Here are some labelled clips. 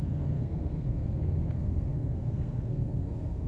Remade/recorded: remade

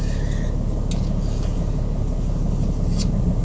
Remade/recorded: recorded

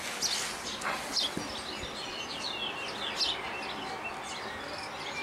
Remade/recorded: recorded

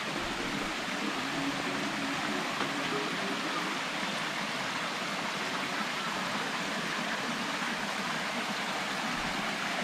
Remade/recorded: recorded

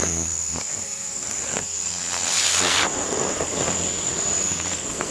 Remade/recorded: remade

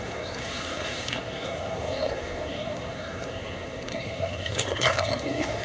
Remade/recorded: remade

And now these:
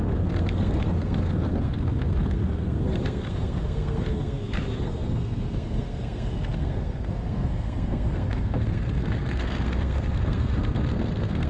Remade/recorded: remade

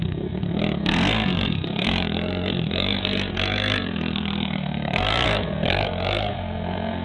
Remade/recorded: remade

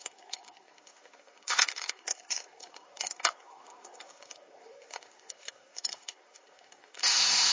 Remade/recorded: remade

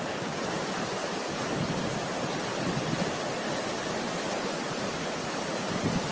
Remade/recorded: recorded